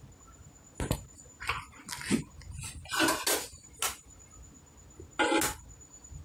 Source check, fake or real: real